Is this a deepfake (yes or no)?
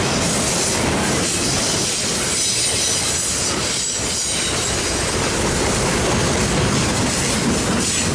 no